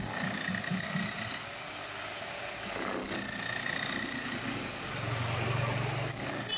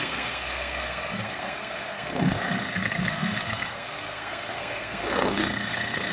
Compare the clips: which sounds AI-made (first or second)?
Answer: second